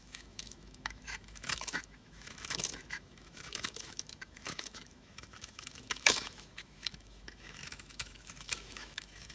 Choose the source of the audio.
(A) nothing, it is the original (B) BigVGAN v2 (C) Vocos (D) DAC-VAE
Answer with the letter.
D